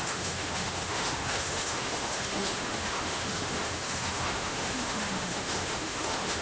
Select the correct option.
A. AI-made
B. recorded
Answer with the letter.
A